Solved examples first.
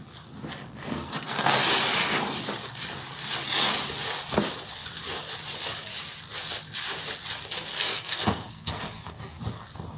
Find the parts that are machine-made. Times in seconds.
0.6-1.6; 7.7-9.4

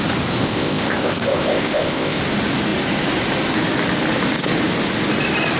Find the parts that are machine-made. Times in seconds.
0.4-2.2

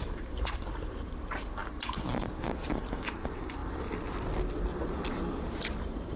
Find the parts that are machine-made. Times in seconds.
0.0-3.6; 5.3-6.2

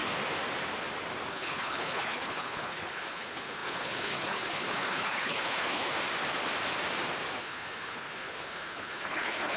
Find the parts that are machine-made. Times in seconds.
1.3-6.0; 7.4-9.6

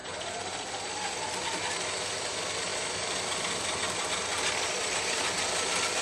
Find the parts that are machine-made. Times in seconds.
0.0-0.6